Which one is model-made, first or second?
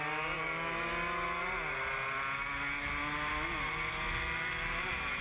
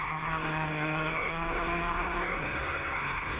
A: second